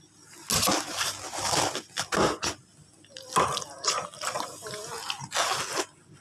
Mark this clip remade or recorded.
recorded